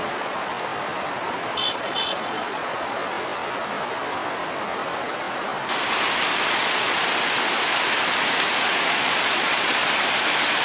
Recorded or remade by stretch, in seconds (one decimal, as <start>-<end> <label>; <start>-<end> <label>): 0.0-0.5 remade; 0.5-1.2 recorded; 1.2-3.0 remade; 3.0-6.5 recorded; 6.5-7.0 remade; 7.0-8.6 recorded; 8.6-9.8 remade; 9.8-10.6 recorded